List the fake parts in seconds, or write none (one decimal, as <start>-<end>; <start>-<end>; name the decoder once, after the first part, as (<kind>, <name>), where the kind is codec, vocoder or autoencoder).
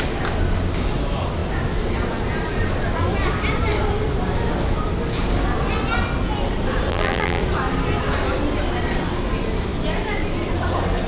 6.9-7.4 (vocoder, BigVGAN v2)